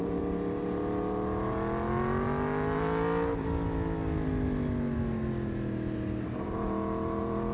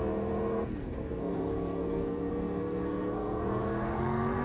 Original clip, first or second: first